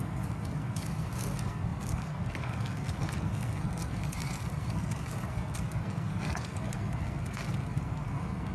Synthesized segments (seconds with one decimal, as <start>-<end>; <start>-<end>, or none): 0.0-8.5